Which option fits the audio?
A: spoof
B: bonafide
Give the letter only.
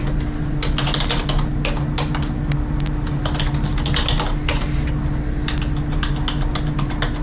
B